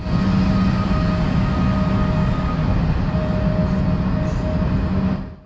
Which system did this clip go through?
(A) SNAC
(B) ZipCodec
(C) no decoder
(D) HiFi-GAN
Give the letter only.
C